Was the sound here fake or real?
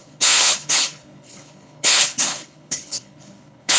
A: fake